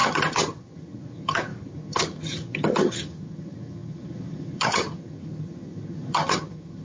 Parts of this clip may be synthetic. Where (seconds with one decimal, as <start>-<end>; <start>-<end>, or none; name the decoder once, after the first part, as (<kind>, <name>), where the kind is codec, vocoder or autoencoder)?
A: 0.0-6.8 (vocoder, HiFi-GAN)